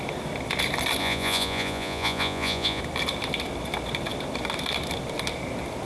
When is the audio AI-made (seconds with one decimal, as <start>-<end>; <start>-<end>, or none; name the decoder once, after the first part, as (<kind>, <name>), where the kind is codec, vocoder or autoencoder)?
1.0-2.8 (vocoder, Vocos)